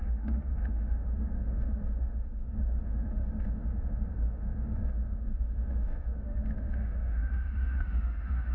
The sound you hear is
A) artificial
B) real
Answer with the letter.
A